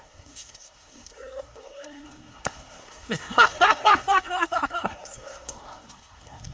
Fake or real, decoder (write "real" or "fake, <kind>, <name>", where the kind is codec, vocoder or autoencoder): fake, codec, SNAC